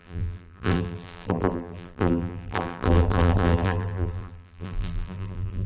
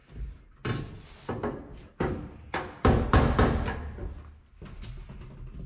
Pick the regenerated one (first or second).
first